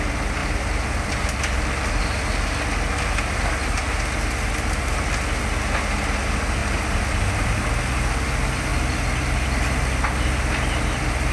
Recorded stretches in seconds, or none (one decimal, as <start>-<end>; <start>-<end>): 0.0-0.4; 2.0-6.6; 7.6-11.3